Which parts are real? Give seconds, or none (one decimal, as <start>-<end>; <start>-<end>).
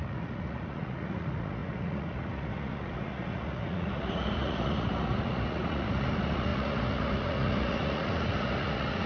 none